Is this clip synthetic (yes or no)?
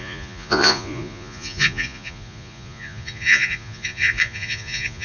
yes